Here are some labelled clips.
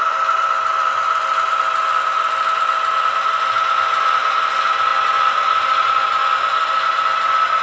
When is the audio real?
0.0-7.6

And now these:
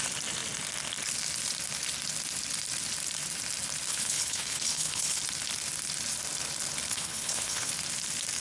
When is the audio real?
0.0-3.9; 5.2-6.9; 7.7-8.4

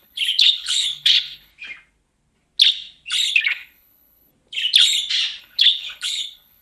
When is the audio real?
1.5-3.3; 4.3-5.4

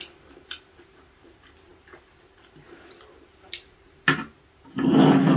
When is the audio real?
0.0-5.4

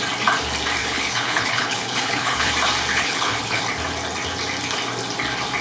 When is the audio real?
0.0-0.8; 2.5-2.9; 3.6-5.6

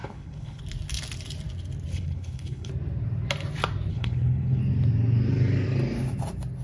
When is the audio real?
0.6-1.9; 2.7-3.9; 4.6-6.6

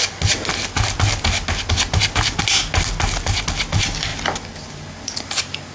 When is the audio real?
0.0-5.7